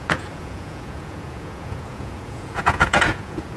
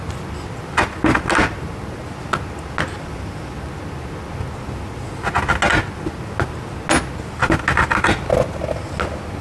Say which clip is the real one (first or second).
second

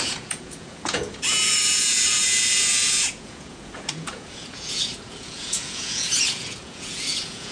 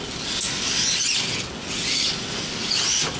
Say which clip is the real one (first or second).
second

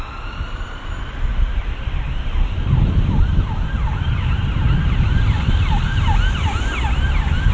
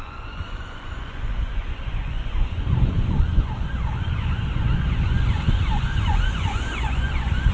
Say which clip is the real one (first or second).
first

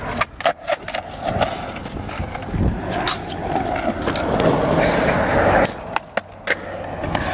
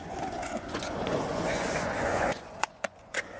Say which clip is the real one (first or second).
first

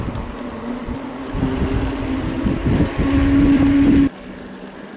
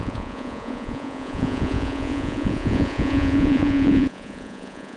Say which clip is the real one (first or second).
first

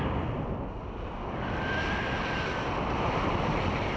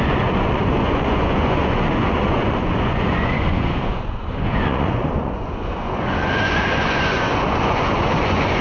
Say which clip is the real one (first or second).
first